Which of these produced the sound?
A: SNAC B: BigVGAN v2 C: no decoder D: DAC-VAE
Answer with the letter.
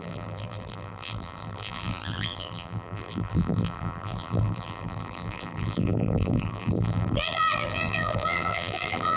B